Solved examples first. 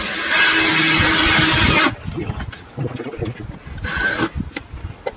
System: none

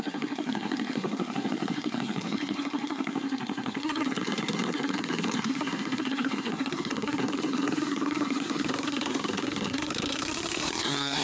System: codec, SNAC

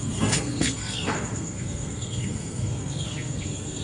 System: codec, SNAC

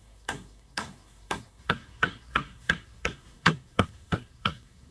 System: codec, SNAC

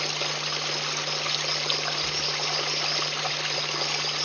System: none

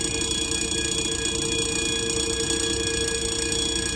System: none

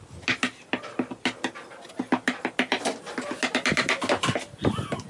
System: none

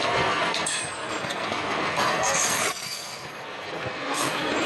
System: codec, SNAC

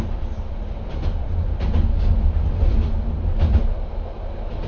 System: none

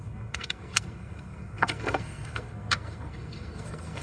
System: codec, SNAC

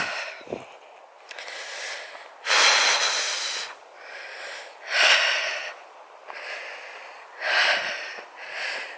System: none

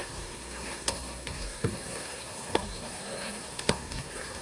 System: codec, SNAC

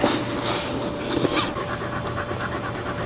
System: none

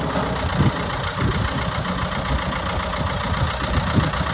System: none